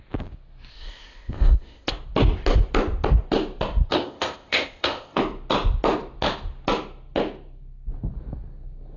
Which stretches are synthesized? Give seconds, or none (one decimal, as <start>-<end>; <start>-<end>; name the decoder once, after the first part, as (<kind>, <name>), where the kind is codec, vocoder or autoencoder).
0.7-1.9 (codec, ZipCodec); 3.9-5.2